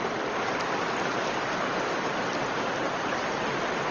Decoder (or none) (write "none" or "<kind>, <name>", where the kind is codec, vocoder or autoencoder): none